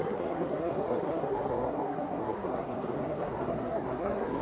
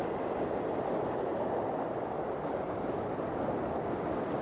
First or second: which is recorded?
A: second